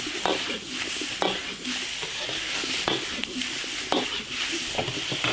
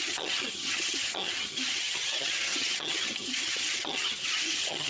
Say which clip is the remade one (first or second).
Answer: second